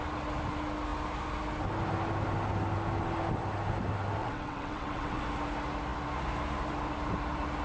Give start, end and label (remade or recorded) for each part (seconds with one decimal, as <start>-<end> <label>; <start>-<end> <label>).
0.0-4.2 recorded; 4.2-5.2 remade; 5.2-7.6 recorded